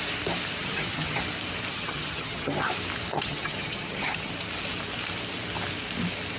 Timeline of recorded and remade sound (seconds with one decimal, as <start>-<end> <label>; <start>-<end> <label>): 0.0-0.6 recorded; 0.6-1.2 remade; 1.2-1.7 recorded; 1.7-2.7 remade; 2.7-3.1 recorded; 3.1-4.3 remade; 4.3-6.4 recorded